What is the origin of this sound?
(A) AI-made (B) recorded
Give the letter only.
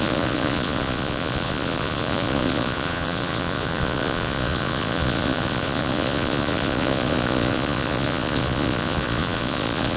A